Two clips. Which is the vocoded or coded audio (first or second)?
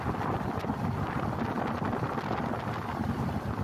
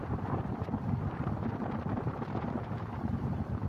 second